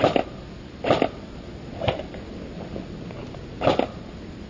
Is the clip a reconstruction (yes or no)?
no